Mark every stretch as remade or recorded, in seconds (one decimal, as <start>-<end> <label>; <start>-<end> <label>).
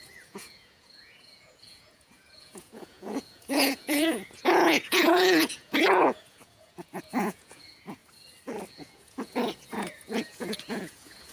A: 0.0-8.0 remade; 8.0-8.7 recorded; 8.7-11.3 remade